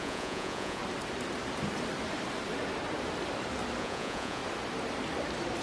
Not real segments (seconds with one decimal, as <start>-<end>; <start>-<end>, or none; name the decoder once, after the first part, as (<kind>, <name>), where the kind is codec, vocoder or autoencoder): 0.0-0.8 (vocoder, Vocos); 3.8-4.4